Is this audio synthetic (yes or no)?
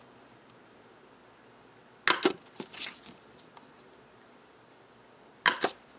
no